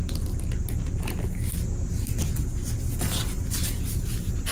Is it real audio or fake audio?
real